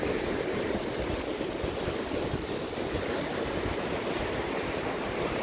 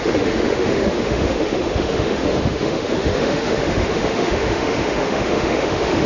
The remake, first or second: second